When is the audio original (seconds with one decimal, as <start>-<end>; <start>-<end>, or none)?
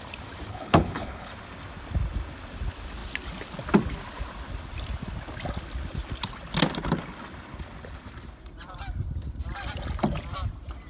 0.0-0.5; 1.3-10.9